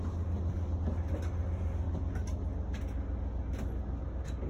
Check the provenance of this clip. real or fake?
real